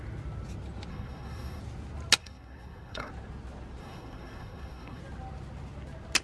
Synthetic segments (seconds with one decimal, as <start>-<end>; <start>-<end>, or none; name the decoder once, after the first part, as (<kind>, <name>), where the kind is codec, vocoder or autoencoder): 0.9-1.6 (codec, SNAC); 2.2-3.1; 3.8-5.0